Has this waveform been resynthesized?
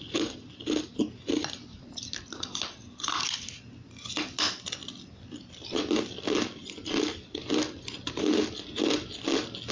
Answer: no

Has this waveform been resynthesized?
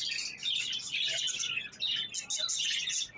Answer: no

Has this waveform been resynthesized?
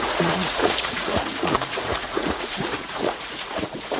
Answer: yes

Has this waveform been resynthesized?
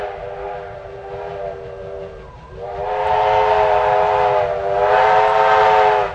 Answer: no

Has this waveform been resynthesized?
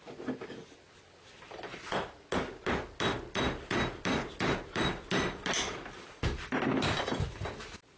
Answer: no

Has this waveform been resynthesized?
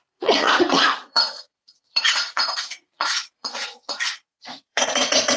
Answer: yes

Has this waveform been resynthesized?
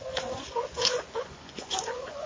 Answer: yes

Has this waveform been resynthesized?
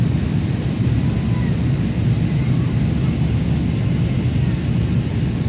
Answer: no